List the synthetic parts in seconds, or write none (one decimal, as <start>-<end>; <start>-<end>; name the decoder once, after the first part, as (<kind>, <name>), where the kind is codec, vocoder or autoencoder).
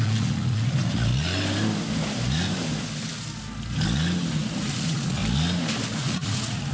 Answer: 0.0-1.1 (vocoder, Vocos); 4.6-5.2; 5.9-6.7